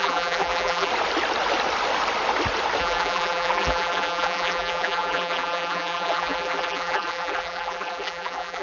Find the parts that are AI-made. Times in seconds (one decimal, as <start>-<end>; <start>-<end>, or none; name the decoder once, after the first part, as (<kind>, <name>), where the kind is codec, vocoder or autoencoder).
0.0-0.9 (vocoder, BigVGAN v2); 2.8-8.6